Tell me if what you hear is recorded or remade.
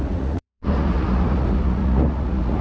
remade